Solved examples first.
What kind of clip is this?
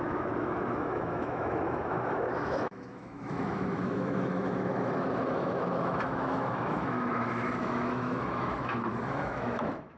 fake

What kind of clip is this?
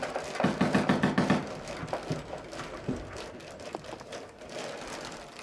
real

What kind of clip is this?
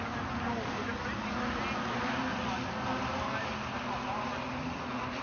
real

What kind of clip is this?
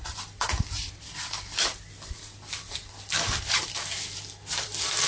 fake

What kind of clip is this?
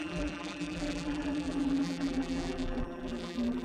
fake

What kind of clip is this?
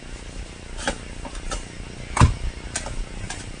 real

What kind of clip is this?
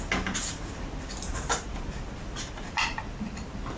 real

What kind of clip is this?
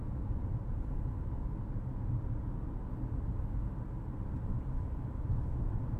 real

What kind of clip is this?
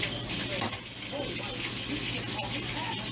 real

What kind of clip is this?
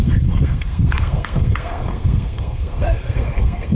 fake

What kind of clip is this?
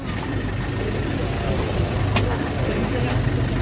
real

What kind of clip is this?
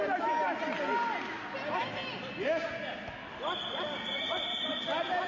real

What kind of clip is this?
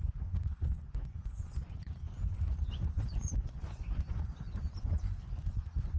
fake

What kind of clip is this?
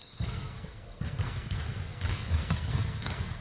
fake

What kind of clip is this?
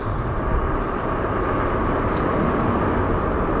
real